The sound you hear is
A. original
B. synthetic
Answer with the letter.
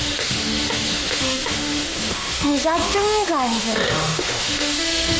B